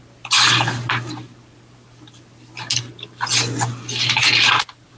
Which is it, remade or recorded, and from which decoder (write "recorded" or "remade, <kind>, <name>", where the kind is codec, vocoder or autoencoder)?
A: recorded